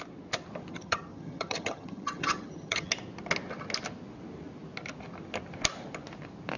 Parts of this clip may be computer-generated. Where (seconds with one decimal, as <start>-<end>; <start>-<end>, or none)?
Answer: 0.7-2.9